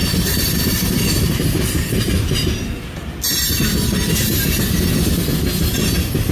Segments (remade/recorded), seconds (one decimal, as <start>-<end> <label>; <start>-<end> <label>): 0.0-3.1 remade; 3.1-6.3 recorded